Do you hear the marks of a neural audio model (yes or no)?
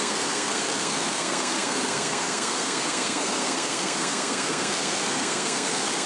yes